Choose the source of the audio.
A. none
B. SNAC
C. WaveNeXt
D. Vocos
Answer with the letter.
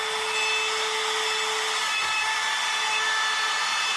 A